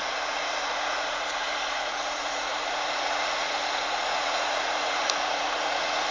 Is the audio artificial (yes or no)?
yes